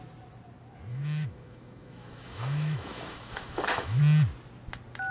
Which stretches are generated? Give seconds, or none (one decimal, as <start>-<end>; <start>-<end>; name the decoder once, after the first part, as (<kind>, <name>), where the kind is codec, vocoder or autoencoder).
0.9-4.0 (autoencoder, DAC-VAE)